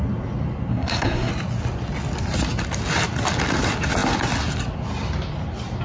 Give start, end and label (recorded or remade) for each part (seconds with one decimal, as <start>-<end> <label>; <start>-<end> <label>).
0.0-0.7 recorded; 0.7-1.3 remade; 1.3-5.8 recorded